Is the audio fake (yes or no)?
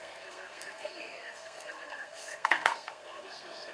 yes